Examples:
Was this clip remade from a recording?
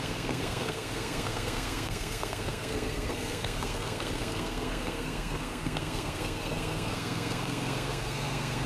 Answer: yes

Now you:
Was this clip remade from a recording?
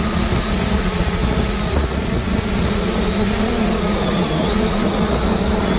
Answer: yes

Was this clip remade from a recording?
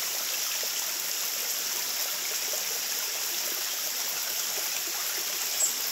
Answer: no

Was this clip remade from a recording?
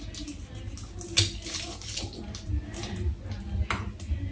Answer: no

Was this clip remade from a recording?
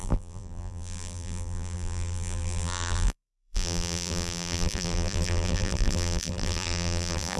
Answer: yes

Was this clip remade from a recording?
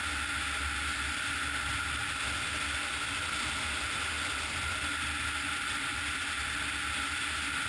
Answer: no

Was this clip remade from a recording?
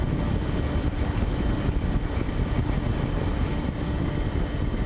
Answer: yes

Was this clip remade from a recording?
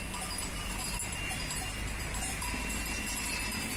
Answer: no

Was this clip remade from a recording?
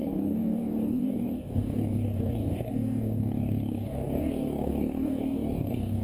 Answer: yes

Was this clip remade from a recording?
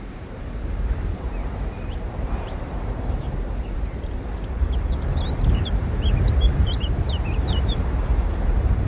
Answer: yes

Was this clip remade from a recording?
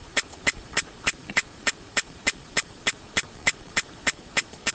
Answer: yes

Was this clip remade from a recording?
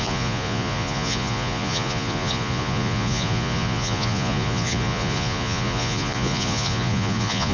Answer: yes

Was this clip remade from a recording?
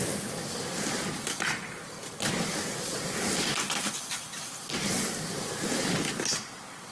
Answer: no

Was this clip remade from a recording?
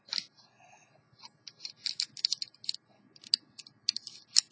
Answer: no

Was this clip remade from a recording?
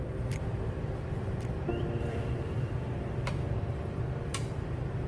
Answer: yes